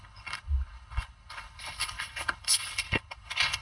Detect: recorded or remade remade